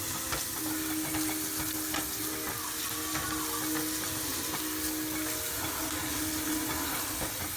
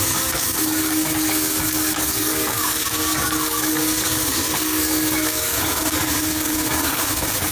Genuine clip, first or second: first